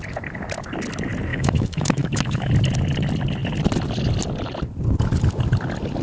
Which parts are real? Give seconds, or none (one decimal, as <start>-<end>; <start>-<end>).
0.0-1.3; 2.5-6.0